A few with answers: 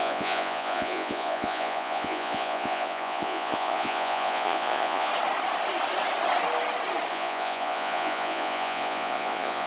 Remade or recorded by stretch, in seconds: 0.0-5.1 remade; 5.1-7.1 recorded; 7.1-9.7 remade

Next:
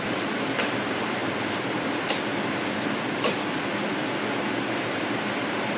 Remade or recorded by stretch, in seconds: 0.0-1.2 remade; 1.2-4.7 recorded; 4.7-5.8 remade

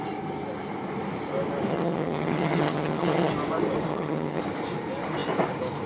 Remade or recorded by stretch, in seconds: 0.0-1.7 recorded; 1.7-3.3 remade; 3.3-3.9 recorded; 3.9-4.4 remade; 4.4-5.9 recorded

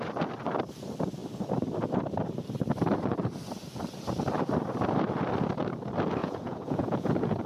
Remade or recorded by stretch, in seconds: 0.0-6.2 recorded; 6.2-7.5 remade

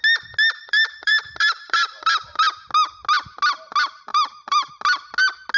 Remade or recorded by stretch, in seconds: 0.0-0.6 recorded; 0.6-2.7 remade; 2.7-4.1 recorded; 4.1-4.7 remade; 4.7-5.6 recorded

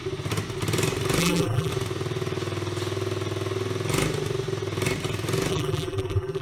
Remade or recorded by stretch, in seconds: 0.0-1.2 recorded; 1.2-1.7 remade; 1.7-5.5 recorded; 5.5-6.4 remade